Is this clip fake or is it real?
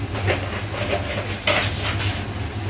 real